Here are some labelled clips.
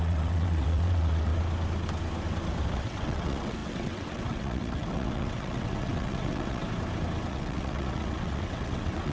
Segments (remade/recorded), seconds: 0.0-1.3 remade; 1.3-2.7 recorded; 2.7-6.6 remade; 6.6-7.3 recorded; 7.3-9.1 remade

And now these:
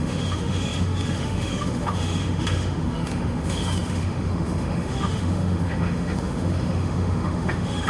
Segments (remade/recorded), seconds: 0.0-7.9 remade